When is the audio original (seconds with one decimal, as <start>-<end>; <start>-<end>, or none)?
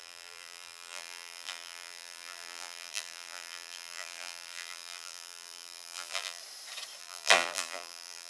6.4-7.0